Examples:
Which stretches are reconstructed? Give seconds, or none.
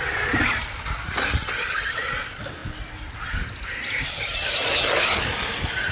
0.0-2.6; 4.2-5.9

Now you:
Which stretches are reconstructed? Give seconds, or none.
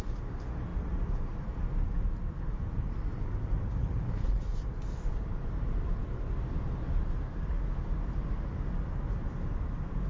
3.8-4.4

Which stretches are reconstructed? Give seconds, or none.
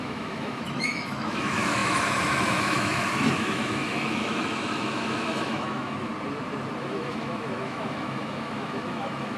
0.0-6.1; 6.8-9.4